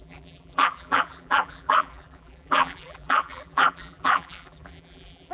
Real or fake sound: fake